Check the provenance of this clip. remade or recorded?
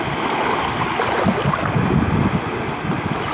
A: recorded